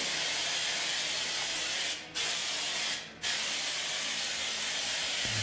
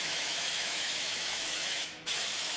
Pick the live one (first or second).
first